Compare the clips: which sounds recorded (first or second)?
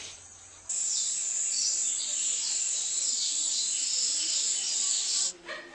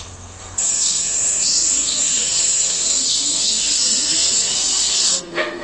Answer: first